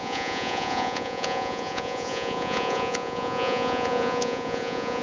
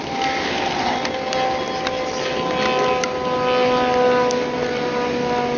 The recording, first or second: second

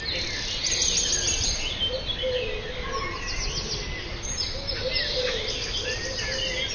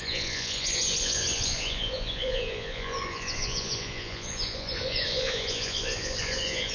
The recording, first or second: first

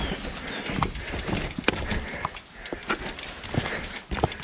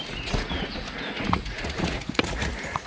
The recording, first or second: first